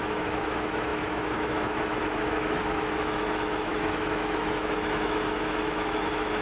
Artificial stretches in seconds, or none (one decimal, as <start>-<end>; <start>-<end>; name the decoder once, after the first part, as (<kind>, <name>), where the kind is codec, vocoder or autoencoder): 0.0-6.4 (autoencoder, DAC-VAE)